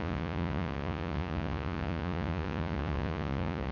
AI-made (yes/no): yes